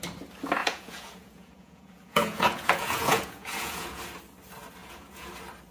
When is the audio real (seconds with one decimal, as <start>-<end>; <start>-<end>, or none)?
0.0-0.6; 4.0-4.8; 5.3-5.7